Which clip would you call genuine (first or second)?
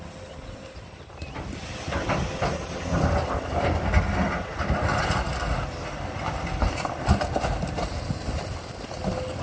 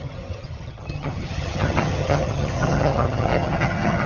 first